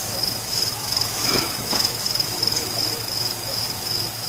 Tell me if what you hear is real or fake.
fake